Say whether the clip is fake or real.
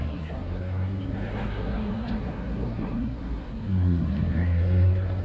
fake